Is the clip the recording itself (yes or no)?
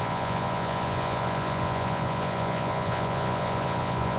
no